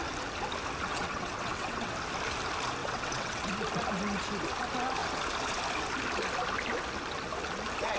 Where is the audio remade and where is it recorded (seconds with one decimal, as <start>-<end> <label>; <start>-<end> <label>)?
0.0-0.9 recorded; 0.9-1.9 remade; 1.9-2.8 recorded; 2.8-3.5 remade; 3.5-8.0 recorded